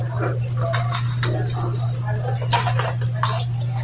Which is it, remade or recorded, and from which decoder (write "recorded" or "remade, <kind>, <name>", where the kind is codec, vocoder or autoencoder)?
recorded